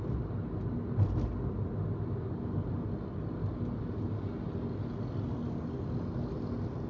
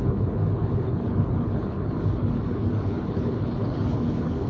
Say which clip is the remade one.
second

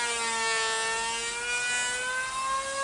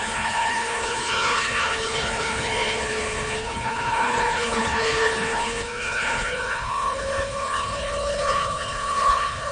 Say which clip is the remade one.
second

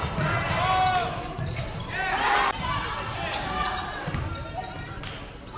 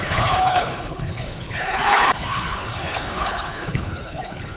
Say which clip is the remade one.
second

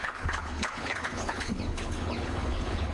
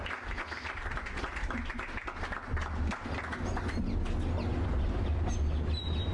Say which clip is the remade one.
first